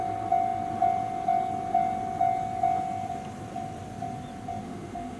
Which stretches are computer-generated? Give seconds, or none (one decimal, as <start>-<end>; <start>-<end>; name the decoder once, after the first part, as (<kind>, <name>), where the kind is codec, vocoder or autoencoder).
4.6-5.2 (autoencoder, DAC-VAE)